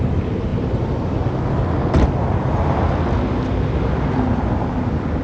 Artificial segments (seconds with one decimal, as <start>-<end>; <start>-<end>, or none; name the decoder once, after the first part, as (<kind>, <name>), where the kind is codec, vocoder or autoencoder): none